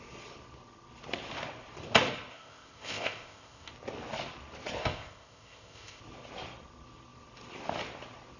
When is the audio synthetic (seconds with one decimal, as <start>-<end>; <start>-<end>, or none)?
2.3-3.7; 4.8-6.0